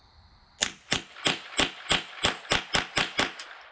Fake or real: real